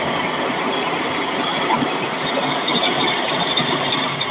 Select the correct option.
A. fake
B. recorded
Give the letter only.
B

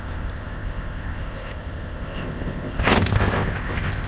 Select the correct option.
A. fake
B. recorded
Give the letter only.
A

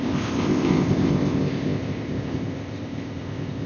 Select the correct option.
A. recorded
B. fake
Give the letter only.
B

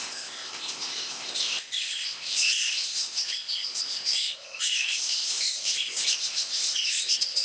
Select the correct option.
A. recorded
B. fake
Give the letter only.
B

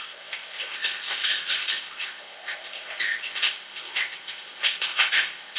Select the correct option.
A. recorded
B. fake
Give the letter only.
B